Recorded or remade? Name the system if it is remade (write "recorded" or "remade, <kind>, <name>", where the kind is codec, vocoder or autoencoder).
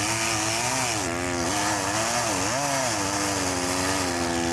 recorded